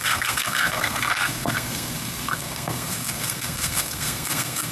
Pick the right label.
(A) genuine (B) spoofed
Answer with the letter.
B